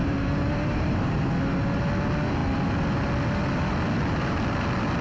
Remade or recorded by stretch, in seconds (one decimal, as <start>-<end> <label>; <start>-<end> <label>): 0.0-1.3 remade; 1.3-5.0 recorded